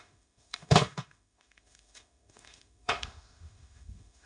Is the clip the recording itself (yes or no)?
no